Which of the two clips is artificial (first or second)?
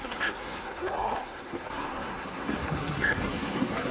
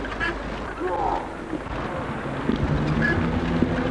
first